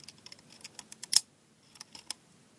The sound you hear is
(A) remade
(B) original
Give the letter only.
B